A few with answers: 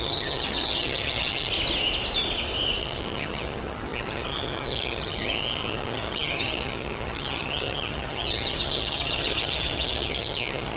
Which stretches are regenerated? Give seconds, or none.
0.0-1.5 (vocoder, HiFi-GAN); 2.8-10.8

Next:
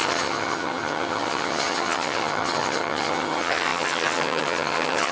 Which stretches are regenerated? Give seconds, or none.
0.0-5.1 (vocoder, HiFi-GAN)

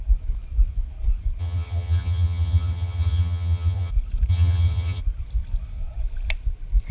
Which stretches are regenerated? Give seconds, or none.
1.4-3.9 (vocoder, HiFi-GAN); 4.3-5.0